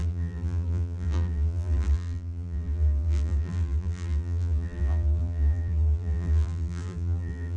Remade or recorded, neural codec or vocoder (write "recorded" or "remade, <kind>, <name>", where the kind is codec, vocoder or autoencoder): remade, vocoder, BigVGAN v2